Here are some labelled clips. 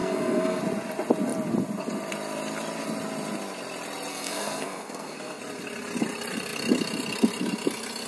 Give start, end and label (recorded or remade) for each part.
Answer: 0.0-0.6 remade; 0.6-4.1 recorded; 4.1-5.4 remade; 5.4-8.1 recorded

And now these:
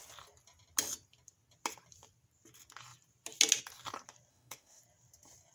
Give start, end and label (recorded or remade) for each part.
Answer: 0.0-4.3 recorded; 4.3-4.8 remade; 4.8-5.5 recorded

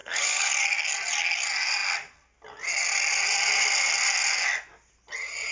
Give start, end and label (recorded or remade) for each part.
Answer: 0.0-0.5 remade; 0.5-5.5 recorded

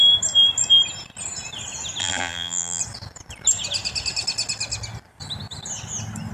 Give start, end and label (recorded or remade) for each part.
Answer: 0.0-2.0 recorded; 2.0-2.8 remade; 2.8-6.3 recorded